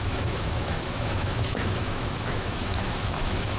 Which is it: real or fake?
fake